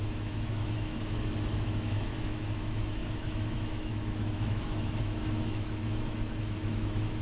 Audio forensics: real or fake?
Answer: fake